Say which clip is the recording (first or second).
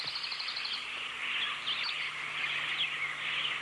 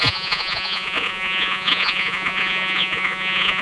first